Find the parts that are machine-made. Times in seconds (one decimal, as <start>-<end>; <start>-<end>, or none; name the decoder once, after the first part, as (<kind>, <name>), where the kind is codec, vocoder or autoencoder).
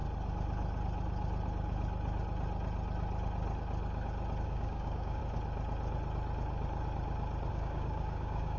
4.4-5.2 (codec, DAC); 7.5-8.6